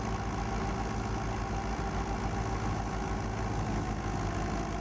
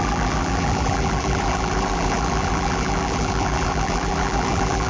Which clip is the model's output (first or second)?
second